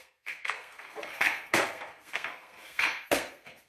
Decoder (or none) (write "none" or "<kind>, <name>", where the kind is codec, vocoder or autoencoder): codec, SNAC